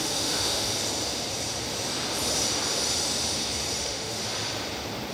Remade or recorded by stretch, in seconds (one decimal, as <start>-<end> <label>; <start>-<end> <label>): 0.0-0.7 remade; 0.7-3.8 recorded; 3.8-4.2 remade; 4.2-5.1 recorded